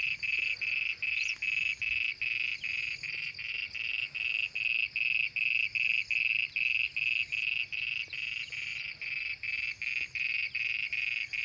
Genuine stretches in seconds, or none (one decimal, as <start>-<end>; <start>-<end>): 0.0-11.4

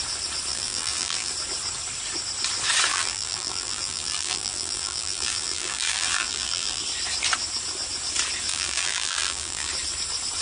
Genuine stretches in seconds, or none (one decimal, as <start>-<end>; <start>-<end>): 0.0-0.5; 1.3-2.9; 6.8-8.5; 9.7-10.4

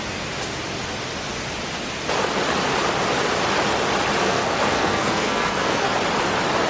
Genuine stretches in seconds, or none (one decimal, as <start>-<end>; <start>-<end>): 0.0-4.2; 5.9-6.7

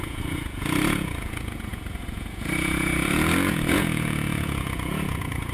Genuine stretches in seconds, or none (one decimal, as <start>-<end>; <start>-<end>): none